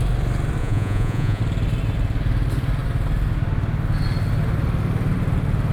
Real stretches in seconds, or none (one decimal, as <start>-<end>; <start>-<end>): 0.0-0.6; 1.4-5.7